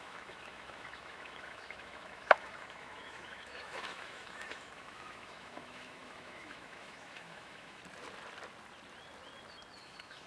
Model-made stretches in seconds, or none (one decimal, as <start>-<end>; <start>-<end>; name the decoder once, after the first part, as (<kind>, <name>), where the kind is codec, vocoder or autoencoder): 0.0-7.8 (autoencoder, DAC-VAE); 9.8-10.3